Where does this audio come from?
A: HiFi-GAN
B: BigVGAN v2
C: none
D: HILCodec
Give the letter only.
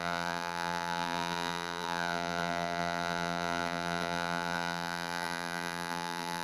B